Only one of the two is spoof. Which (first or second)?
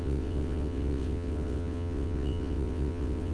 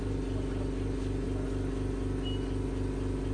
first